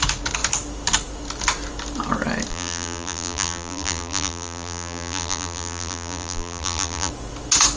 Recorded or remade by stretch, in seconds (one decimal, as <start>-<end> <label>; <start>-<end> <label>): 0.0-2.5 recorded; 2.5-7.1 remade; 7.1-7.8 recorded